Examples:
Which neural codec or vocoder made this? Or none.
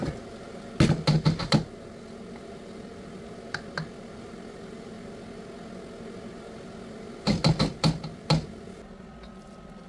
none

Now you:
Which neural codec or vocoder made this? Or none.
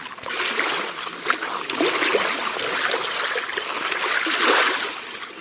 none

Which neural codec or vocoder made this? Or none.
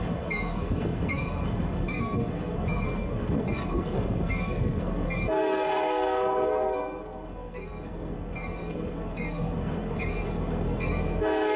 codec, SNAC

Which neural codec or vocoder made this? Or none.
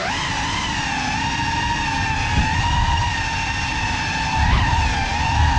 vocoder, BigVGAN v2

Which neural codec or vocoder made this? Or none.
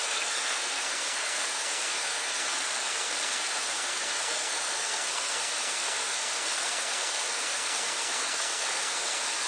codec, SNAC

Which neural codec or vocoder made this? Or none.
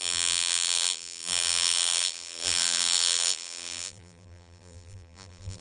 vocoder, BigVGAN v2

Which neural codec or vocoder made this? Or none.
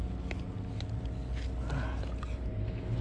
none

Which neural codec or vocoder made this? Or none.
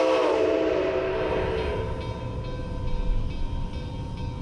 none